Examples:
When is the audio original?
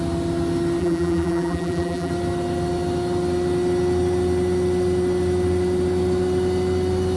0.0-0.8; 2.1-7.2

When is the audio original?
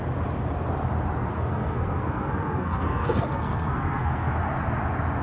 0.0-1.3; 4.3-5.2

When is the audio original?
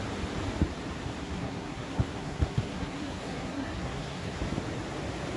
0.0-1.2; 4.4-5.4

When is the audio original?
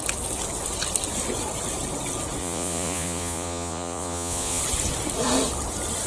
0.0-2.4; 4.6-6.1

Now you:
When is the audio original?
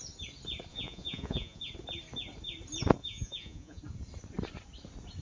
0.0-0.7; 1.7-3.0; 3.8-5.2